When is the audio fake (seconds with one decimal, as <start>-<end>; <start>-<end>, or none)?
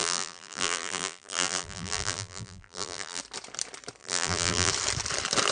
0.0-3.2; 4.0-4.7